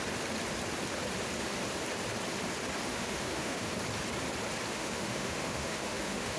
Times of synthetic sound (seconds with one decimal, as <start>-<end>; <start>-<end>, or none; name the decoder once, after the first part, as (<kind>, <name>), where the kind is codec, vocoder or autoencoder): 2.9-3.7 (autoencoder, DAC-VAE); 4.7-6.4